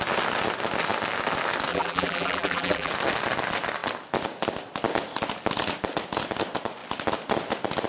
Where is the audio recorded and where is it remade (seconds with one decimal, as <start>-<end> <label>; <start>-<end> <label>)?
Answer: 0.0-1.7 recorded; 1.7-2.9 remade; 2.9-7.9 recorded